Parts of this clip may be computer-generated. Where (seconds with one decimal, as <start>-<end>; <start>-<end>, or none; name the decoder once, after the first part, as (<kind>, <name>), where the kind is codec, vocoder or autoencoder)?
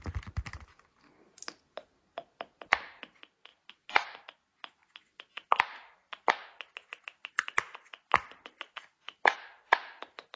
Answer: none